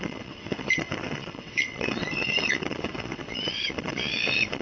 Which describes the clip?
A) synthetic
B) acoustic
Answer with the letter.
A